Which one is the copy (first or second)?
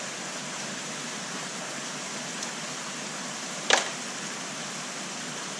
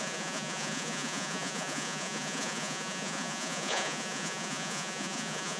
second